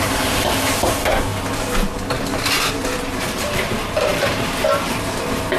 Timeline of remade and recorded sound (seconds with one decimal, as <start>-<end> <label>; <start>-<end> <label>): 0.0-1.3 remade; 1.3-2.7 recorded; 2.7-5.6 remade